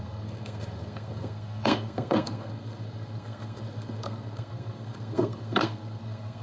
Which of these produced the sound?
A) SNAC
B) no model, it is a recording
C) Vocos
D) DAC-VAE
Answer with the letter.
A